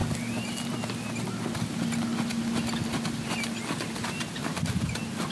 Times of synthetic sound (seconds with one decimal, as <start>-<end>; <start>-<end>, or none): none